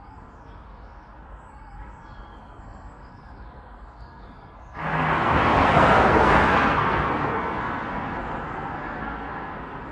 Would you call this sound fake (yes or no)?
yes